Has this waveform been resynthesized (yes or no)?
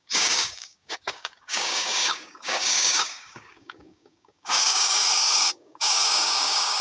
yes